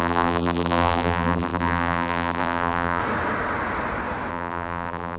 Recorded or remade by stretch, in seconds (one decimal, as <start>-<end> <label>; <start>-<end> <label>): 0.0-3.0 remade; 3.0-4.3 recorded; 4.3-5.2 remade